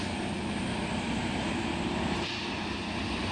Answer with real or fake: real